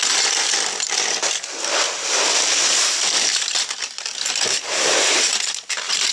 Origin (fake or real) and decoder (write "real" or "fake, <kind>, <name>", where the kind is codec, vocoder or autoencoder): real